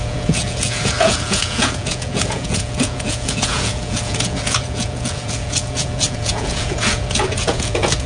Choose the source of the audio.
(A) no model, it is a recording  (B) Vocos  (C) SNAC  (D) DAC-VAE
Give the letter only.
B